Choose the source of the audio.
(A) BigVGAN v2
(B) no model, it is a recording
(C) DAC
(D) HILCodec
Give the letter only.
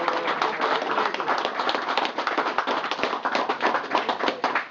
B